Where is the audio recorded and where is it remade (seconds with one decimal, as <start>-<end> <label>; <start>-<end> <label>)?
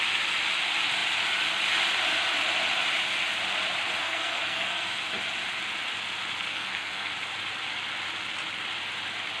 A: 0.0-4.0 recorded; 4.0-5.0 remade; 5.0-6.5 recorded; 6.5-7.1 remade; 7.1-9.4 recorded